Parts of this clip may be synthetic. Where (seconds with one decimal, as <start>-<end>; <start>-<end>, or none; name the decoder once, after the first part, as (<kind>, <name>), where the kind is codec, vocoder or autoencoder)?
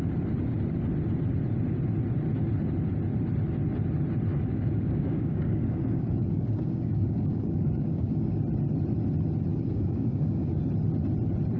4.3-8.4 (codec, DAC); 9.5-10.6